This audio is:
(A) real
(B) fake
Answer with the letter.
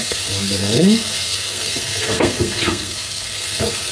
B